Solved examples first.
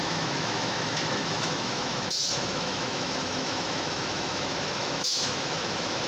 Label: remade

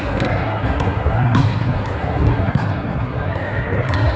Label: remade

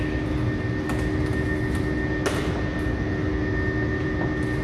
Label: recorded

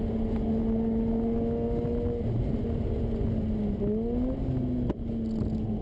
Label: recorded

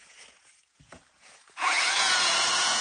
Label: remade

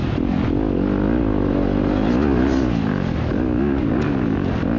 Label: recorded